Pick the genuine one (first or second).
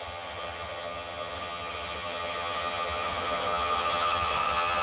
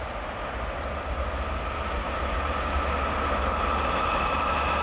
second